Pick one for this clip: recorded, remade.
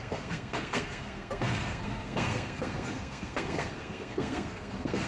remade